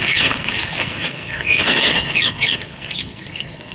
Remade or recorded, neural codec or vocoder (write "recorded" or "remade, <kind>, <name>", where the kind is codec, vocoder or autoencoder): remade, codec, SNAC